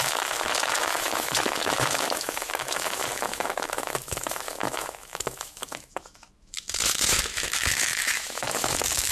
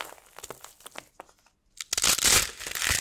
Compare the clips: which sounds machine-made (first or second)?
first